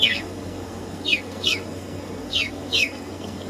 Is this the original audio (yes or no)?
no